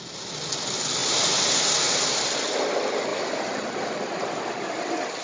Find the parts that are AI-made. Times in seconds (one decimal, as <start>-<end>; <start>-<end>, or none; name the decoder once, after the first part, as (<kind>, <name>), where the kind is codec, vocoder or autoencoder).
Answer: 1.0-2.3 (vocoder, BigVGAN v2); 3.1-4.4